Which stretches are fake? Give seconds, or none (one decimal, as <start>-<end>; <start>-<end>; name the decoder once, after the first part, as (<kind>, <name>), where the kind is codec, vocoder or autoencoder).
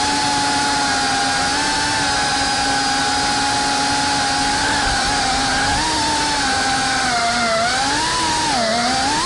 none